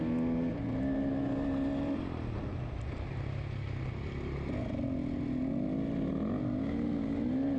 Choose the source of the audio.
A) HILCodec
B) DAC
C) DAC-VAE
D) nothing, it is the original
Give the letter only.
D